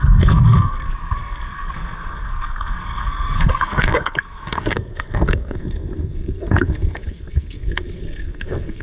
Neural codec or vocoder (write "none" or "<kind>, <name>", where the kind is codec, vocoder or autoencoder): codec, SNAC